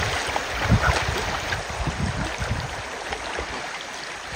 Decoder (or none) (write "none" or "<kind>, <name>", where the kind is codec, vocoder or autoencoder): none